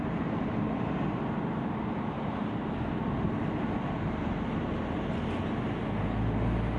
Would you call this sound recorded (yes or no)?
yes